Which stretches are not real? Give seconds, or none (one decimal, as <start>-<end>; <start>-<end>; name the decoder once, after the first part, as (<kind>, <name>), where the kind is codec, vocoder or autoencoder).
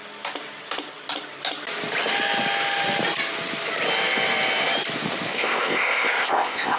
5.3-6.8 (codec, ZipCodec)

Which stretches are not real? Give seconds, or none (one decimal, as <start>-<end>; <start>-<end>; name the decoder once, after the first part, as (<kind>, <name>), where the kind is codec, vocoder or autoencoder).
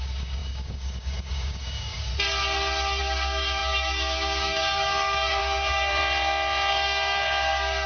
0.0-2.1 (codec, DAC); 3.0-6.0; 6.7-7.9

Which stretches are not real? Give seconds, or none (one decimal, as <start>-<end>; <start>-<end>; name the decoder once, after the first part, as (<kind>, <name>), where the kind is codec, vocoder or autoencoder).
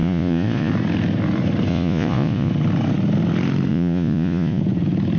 0.0-0.7 (vocoder, Vocos); 1.7-2.5; 3.7-4.6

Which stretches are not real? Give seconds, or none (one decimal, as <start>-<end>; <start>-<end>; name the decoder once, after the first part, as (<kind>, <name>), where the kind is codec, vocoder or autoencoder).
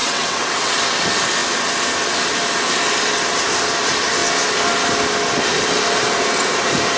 0.0-0.8 (vocoder, WaveNeXt)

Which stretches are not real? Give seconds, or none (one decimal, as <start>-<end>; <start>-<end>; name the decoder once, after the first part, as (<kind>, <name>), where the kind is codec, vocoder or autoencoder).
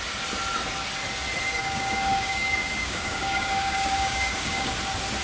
1.6-4.7 (codec, DAC)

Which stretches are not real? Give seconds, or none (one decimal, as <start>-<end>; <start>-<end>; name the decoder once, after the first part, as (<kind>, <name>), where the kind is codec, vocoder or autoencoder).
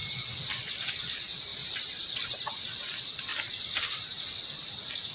0.0-0.6 (vocoder, BigVGAN v2); 1.5-2.8; 3.3-4.2